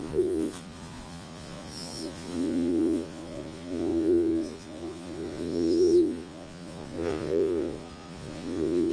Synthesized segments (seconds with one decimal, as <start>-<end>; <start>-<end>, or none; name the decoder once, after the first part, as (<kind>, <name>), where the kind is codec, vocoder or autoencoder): 0.0-8.9 (vocoder, Vocos)

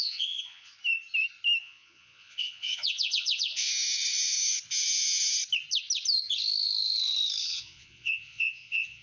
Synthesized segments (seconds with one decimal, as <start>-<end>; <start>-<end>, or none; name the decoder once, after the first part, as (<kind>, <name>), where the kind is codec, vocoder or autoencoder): 0.0-0.7 (vocoder, Vocos); 1.6-3.7; 7.4-9.0

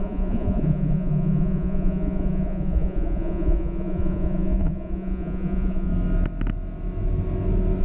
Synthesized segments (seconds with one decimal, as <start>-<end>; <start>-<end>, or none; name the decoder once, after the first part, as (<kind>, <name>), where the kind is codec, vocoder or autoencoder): 0.0-5.9 (vocoder, Vocos)

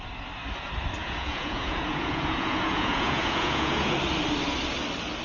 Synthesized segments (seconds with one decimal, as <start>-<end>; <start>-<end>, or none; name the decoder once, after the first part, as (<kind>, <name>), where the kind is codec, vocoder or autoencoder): 1.0-3.9 (vocoder, Vocos)